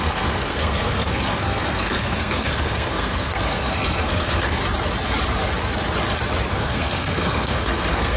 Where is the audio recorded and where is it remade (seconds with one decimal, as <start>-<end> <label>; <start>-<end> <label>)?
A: 0.0-4.6 remade; 4.6-6.5 recorded; 6.5-8.2 remade